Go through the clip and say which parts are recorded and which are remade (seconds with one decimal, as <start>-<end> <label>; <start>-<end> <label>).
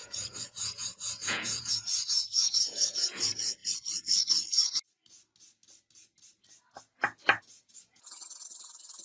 0.0-3.6 remade; 3.6-7.4 recorded; 7.4-9.0 remade